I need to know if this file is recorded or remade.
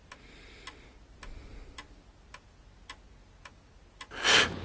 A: recorded